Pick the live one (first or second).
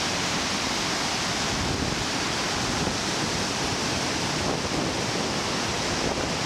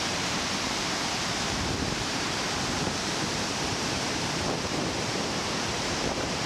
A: first